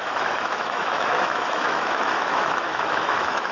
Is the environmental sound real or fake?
fake